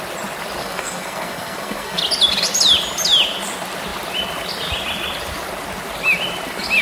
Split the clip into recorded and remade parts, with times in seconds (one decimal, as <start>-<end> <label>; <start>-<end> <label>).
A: 0.0-0.6 recorded; 0.6-2.0 remade; 2.0-6.8 recorded